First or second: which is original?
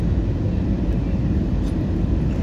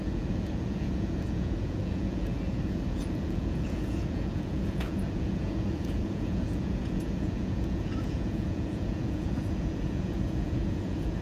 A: first